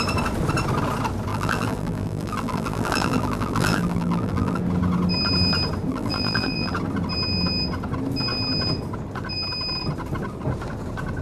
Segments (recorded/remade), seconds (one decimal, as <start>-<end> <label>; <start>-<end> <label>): 0.0-1.3 recorded; 1.3-4.6 remade; 4.6-5.9 recorded; 5.9-6.7 remade; 6.7-11.2 recorded